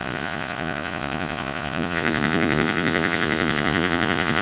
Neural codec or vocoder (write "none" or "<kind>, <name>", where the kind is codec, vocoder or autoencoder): vocoder, Vocos